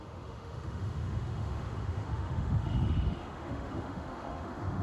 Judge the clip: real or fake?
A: fake